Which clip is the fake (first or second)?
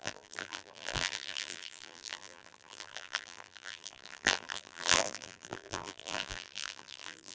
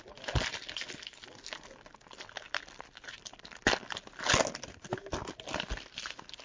first